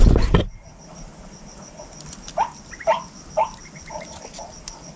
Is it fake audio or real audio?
real